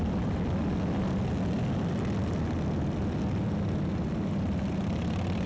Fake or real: real